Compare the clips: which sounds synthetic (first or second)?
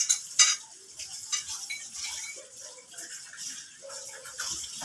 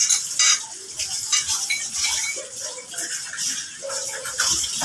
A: first